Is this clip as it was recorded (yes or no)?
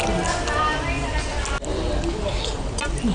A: yes